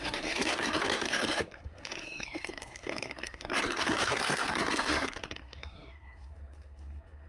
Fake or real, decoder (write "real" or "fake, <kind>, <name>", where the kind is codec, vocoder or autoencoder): fake, codec, SNAC